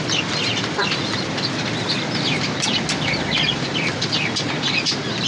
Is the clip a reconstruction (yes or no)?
no